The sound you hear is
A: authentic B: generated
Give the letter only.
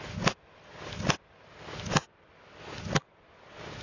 A